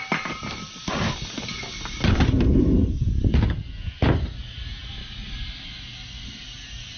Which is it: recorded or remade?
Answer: recorded